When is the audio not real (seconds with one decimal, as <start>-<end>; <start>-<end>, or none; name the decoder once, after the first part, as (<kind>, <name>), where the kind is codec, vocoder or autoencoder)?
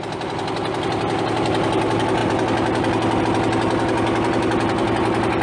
none